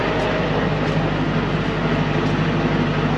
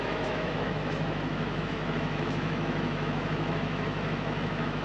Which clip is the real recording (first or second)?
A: first